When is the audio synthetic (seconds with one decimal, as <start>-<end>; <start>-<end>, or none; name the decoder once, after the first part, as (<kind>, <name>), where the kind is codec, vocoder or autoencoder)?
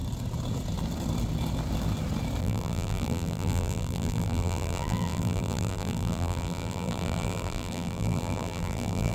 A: 2.4-9.1 (vocoder, BigVGAN v2)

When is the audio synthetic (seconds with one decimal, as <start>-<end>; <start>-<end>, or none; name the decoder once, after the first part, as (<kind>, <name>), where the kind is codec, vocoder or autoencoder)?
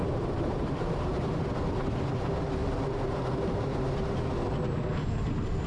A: 0.0-1.4 (vocoder, BigVGAN v2); 2.6-4.3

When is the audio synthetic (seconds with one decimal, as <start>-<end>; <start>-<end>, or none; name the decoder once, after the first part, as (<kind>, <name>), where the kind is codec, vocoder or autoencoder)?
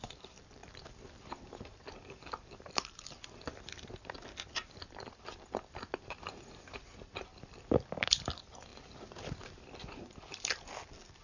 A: 0.0-8.7 (vocoder, BigVGAN v2); 10.0-11.2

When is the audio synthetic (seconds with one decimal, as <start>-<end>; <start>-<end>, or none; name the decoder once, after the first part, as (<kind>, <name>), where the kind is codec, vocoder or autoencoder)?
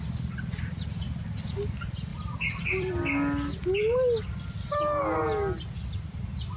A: 2.1-2.9 (vocoder, BigVGAN v2)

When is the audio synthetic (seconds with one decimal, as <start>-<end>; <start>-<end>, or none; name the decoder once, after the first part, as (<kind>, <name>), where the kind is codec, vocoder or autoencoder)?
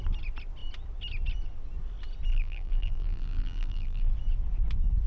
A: 2.3-4.1 (vocoder, BigVGAN v2)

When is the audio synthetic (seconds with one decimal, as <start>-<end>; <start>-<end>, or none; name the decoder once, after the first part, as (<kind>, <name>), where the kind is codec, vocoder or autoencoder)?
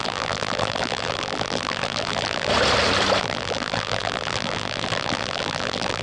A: 0.0-2.5 (vocoder, BigVGAN v2); 3.2-6.0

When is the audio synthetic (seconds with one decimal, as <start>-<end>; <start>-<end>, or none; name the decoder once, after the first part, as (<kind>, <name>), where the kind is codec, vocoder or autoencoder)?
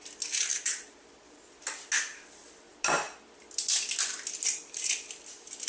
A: 0.5-1.5 (vocoder, BigVGAN v2)